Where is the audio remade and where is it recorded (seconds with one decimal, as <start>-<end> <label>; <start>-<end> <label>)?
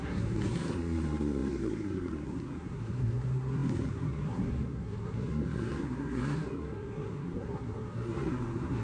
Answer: 0.0-8.8 remade